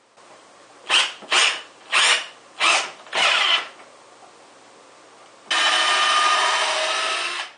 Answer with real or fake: real